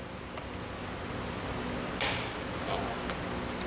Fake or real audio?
real